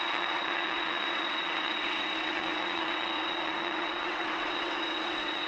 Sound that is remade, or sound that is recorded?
remade